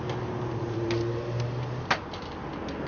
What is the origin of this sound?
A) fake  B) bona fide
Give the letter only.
B